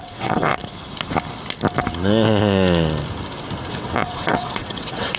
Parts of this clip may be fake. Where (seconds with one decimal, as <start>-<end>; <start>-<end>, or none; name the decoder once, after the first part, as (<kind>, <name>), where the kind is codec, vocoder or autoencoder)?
0.0-0.6 (vocoder, WaveNeXt); 3.7-5.2